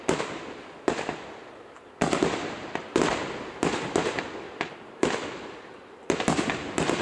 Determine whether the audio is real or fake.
real